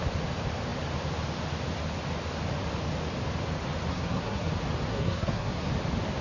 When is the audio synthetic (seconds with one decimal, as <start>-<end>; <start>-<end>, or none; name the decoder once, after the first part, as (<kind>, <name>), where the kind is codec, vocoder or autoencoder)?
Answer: 3.9-4.5 (codec, SNAC); 4.9-5.7